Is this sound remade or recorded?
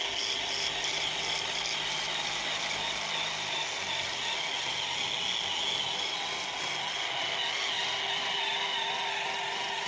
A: recorded